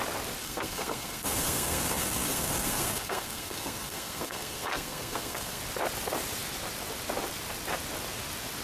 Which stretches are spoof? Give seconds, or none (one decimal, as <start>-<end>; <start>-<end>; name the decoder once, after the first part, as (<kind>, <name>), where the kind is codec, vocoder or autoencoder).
0.4-5.6 (codec, SNAC)